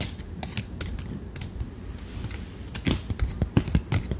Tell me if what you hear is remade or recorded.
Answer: recorded